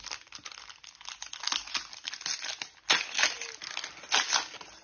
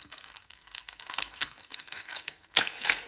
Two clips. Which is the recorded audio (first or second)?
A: first